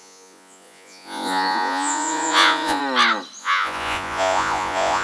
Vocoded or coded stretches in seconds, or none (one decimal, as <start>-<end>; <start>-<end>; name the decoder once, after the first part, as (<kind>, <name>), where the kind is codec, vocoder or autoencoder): 0.0-2.8 (vocoder, Vocos); 3.4-5.0